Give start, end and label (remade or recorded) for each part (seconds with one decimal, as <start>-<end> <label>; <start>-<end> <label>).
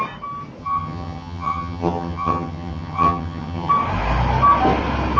0.0-0.6 recorded; 0.6-3.7 remade; 3.7-5.2 recorded